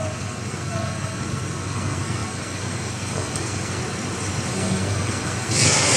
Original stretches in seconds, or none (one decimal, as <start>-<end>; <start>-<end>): 3.8-4.5